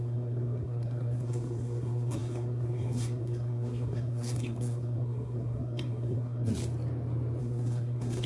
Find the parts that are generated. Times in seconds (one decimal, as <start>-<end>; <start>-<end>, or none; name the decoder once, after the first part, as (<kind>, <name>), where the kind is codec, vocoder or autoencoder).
0.0-6.5 (codec, SNAC); 7.4-8.3

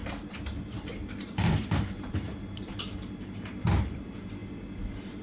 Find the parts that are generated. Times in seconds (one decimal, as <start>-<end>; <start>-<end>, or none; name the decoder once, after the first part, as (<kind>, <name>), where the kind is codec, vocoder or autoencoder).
0.0-2.8 (vocoder, BigVGAN v2)

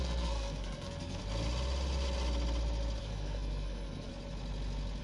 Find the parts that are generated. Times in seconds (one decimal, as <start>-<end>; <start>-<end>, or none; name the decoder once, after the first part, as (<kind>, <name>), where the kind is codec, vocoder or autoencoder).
0.0-1.2 (codec, SNAC); 3.0-4.1

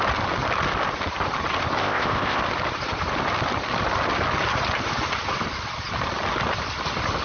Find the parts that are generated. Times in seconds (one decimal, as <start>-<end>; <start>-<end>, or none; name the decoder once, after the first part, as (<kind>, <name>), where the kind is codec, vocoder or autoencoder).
1.8-2.4 (codec, ZipCodec)

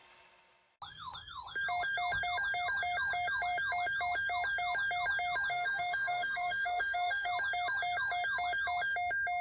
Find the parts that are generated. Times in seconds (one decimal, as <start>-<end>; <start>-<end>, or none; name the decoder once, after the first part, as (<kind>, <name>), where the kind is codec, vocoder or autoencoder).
5.5-7.3 (codec, SNAC)

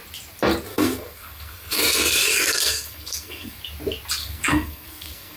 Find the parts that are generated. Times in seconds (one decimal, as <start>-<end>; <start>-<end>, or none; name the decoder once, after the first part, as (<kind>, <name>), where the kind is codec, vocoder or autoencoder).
0.7-3.6 (codec, SNAC); 4.2-5.4

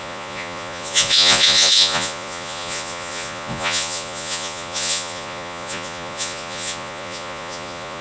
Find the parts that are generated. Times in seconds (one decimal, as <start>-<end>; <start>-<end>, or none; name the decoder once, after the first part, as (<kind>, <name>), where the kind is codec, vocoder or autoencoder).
0.0-8.0 (vocoder, Vocos)